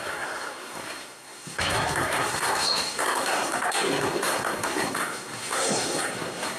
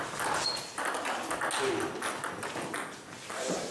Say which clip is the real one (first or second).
second